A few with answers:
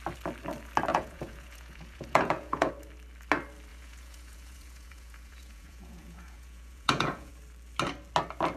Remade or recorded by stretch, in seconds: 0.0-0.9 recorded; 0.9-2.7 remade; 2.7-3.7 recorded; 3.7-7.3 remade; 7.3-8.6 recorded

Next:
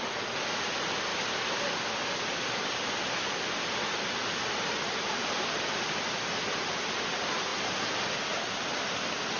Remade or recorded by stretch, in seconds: 0.0-9.4 recorded

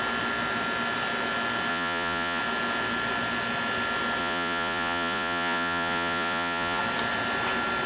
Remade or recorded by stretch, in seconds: 0.0-1.7 recorded; 1.7-2.4 remade; 2.4-4.2 recorded; 4.2-6.8 remade; 6.8-7.9 recorded

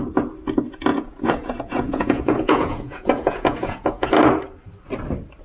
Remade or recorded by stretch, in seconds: 0.0-0.9 recorded; 0.9-4.1 remade; 4.1-5.4 recorded

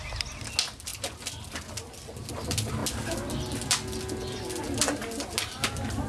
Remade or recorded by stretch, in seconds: 0.0-6.1 recorded

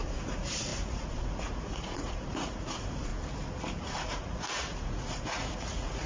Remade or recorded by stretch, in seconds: 0.0-3.1 remade; 3.1-3.8 recorded; 3.8-6.1 remade

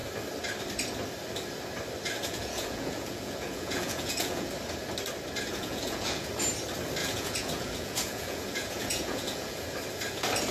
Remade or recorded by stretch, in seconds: 0.0-2.2 recorded; 2.2-4.5 remade; 4.5-5.5 recorded; 5.5-6.3 remade; 6.3-7.0 recorded; 7.0-9.6 remade; 9.6-10.5 recorded